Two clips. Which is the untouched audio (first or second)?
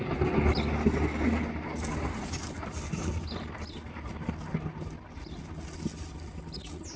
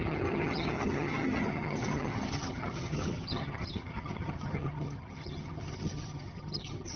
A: first